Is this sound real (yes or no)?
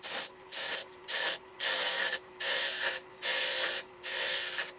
no